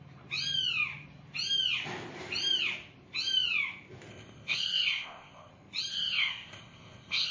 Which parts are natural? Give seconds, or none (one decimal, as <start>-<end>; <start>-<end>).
0.0-4.1; 5.5-5.9